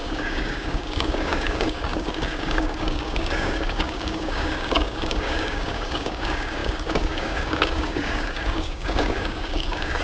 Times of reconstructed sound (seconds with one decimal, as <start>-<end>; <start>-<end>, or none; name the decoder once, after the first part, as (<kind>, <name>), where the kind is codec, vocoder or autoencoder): 0.0-10.0 (codec, DAC)